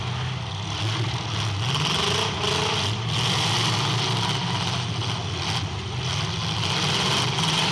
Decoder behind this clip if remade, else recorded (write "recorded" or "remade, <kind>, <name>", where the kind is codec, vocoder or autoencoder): recorded